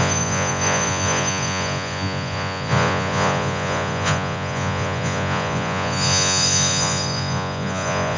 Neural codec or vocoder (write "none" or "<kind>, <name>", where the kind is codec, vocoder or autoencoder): vocoder, Vocos